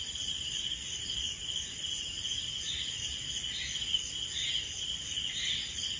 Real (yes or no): yes